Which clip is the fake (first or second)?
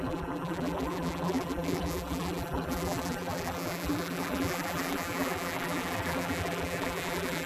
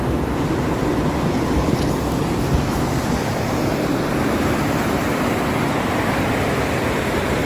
first